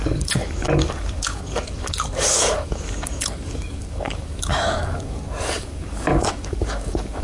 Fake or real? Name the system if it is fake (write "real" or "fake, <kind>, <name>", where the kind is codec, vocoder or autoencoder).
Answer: fake, codec, DAC